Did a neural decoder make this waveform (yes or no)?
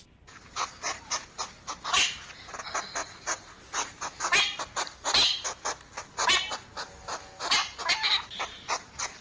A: no